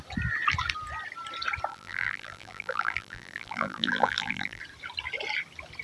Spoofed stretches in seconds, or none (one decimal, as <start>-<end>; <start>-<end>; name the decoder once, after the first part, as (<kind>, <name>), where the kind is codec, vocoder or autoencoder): 1.7-4.6 (vocoder, BigVGAN v2)